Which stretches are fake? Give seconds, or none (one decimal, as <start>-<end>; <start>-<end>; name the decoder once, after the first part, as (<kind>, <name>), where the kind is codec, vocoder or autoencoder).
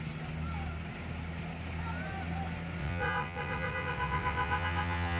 2.8-5.2 (vocoder, WaveNeXt)